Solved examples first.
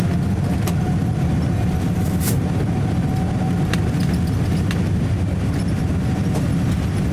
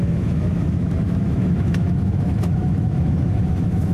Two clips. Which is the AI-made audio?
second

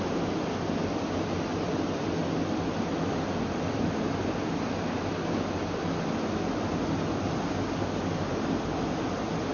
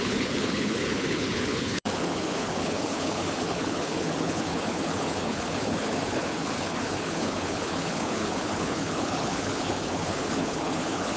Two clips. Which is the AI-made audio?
second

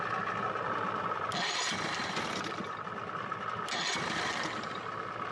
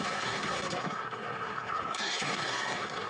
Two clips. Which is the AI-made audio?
second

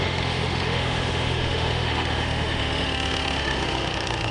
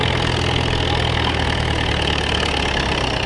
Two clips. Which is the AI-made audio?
first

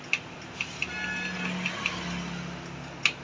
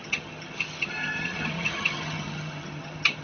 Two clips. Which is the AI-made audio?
second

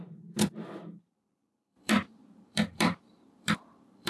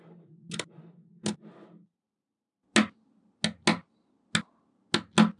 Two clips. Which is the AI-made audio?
first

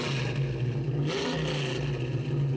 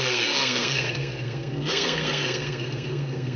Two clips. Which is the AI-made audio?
second